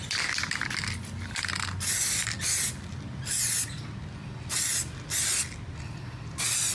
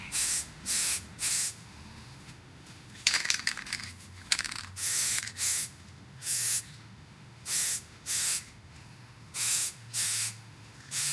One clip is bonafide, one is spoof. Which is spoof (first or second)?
second